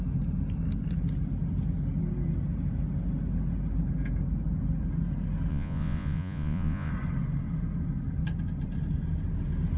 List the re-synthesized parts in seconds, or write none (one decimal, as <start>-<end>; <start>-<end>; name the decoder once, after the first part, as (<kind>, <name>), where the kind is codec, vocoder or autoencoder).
5.5-6.9 (vocoder, Vocos)